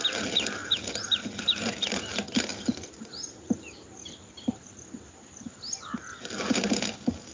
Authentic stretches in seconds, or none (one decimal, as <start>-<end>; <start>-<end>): 0.0-0.6; 1.2-2.5; 6.6-7.3